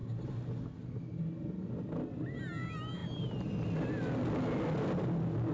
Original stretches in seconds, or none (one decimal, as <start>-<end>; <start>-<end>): 1.0-5.5